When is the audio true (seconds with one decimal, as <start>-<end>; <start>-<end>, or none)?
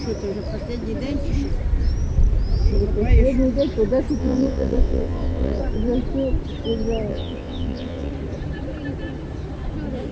0.0-4.2; 5.6-7.1; 8.1-10.1